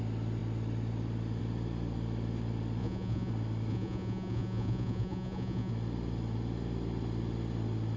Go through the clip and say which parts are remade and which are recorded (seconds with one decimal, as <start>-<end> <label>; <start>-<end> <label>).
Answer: 0.0-2.8 recorded; 2.8-3.3 remade; 3.3-3.7 recorded; 3.7-5.7 remade; 5.7-8.0 recorded